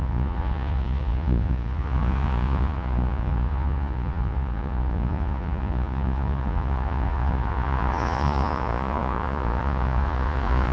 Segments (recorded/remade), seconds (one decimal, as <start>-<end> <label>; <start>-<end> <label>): 0.0-10.7 remade